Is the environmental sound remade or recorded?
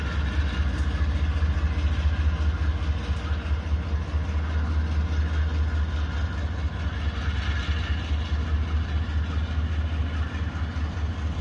recorded